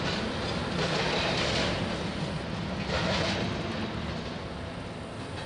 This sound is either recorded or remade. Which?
recorded